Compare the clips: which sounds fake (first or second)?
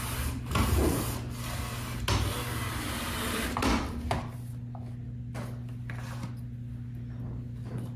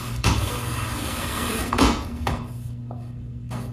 second